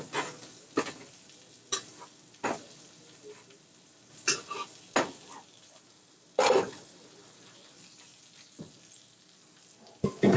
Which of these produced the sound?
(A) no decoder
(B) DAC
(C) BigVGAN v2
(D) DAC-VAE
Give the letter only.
A